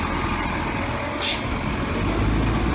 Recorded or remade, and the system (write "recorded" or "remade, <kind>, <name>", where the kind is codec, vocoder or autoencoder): recorded